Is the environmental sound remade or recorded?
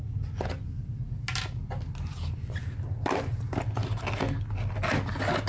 recorded